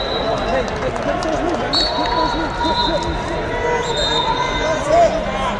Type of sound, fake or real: real